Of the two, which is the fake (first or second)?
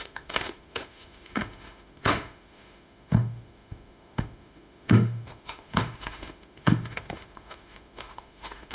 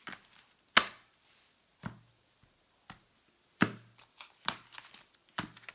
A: first